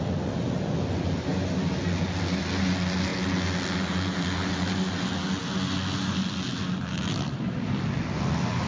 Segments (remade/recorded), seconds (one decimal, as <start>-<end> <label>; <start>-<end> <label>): 0.0-8.7 recorded